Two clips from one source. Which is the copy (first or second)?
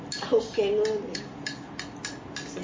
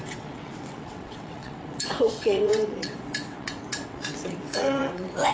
second